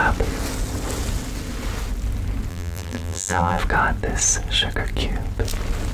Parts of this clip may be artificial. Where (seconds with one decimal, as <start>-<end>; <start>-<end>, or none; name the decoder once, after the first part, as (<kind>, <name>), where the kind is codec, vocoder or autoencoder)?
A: 2.5-3.6 (vocoder, BigVGAN v2)